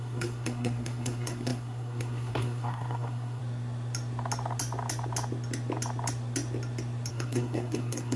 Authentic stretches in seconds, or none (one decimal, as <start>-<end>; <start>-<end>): 3.4-7.1